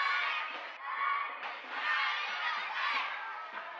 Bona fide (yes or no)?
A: yes